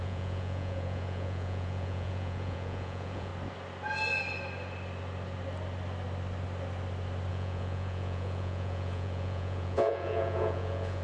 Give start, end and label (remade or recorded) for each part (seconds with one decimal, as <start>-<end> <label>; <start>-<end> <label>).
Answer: 0.0-3.3 remade; 3.3-7.3 recorded; 7.3-11.0 remade